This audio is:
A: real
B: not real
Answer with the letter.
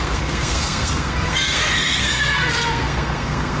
B